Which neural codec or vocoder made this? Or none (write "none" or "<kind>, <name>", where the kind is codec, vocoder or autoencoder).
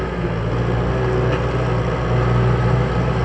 none